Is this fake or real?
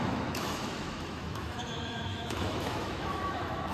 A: fake